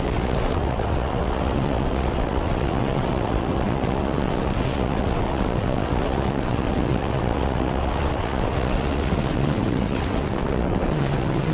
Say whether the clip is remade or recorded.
remade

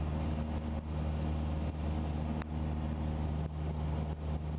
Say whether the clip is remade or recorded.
recorded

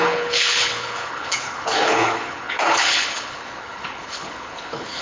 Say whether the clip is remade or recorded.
remade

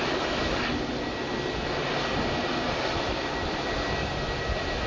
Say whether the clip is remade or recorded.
recorded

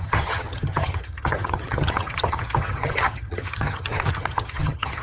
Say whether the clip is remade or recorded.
remade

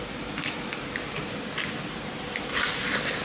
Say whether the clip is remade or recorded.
recorded